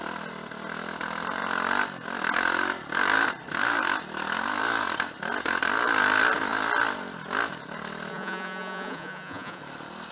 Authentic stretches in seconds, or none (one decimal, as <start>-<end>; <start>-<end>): 0.0-8.1; 9.6-10.1